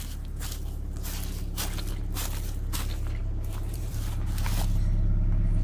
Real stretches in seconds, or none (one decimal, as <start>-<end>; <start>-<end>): 0.0-3.2; 4.1-5.6

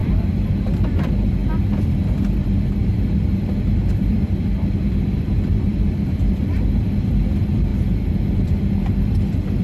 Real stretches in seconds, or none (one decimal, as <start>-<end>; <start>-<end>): 1.4-2.2; 7.7-8.3

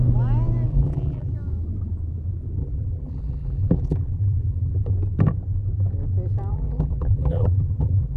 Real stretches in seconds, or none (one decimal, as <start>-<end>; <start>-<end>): 0.0-0.7; 1.3-2.6; 4.9-6.5

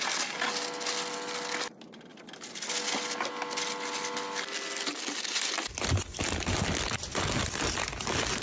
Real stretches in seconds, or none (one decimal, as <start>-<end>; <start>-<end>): 0.0-8.4

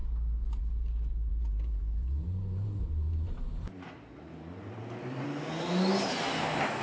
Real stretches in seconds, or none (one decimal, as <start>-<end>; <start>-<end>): 0.0-1.3; 5.4-6.8

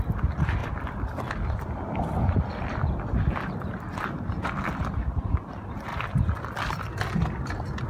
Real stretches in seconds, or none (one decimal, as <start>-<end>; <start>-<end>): 0.0-0.6; 5.2-5.9; 6.6-7.9